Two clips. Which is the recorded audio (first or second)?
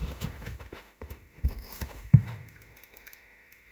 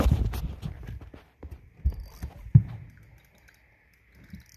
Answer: second